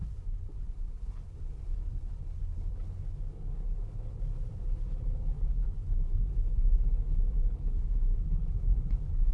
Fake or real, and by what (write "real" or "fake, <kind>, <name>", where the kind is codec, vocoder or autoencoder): fake, codec, HILCodec